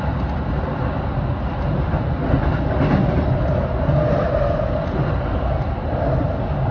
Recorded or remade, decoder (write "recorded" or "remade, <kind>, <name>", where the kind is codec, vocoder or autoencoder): recorded